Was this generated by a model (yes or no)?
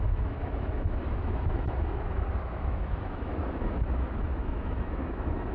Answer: yes